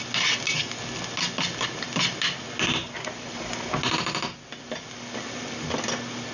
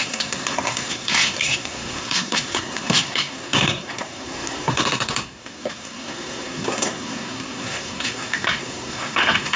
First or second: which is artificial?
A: second